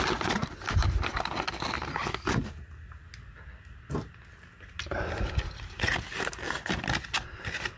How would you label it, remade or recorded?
recorded